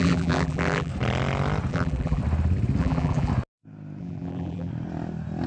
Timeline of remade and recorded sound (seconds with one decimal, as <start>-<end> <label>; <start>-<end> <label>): 0.0-0.9 remade; 0.9-1.7 recorded; 1.7-2.2 remade; 2.2-2.8 recorded; 2.8-3.3 remade; 3.3-4.0 recorded; 4.0-4.7 remade; 4.7-5.5 recorded